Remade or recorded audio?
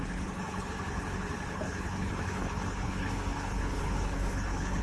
remade